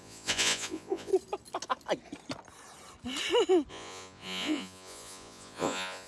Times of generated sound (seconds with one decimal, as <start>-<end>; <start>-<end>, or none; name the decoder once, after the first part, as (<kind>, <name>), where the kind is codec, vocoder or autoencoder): 0.0-1.1 (vocoder, Vocos); 3.7-6.1

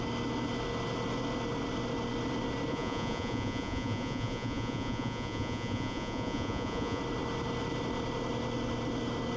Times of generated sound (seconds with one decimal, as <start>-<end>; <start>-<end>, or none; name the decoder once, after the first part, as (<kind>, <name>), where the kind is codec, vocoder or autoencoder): 2.7-7.0 (vocoder, Vocos)

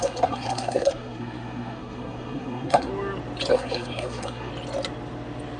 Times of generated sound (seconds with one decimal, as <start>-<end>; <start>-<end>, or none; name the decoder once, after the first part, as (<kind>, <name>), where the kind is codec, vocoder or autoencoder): 0.0-2.9 (codec, SNAC); 3.5-4.5

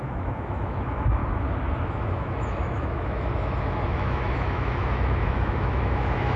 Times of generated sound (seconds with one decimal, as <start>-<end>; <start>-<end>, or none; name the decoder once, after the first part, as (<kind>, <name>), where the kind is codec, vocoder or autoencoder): 0.0-1.2 (autoencoder, DAC-VAE); 1.9-6.4

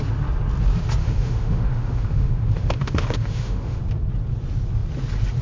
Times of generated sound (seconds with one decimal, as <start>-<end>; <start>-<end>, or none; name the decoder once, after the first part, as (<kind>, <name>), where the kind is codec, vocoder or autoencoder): 1.0-3.8 (autoencoder, DAC-VAE)

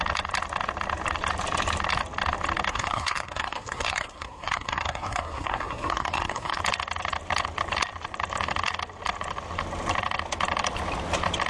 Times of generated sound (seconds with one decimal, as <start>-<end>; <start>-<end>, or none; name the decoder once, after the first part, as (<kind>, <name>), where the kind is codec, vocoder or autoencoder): 2.7-6.6 (codec, SNAC)